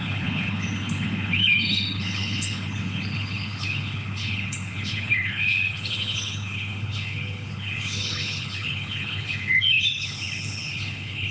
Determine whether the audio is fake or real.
fake